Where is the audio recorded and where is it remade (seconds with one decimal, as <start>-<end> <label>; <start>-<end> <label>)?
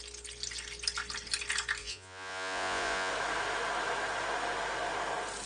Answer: 0.0-1.8 recorded; 1.8-3.1 remade; 3.1-5.5 recorded